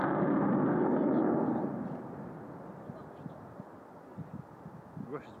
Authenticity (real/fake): real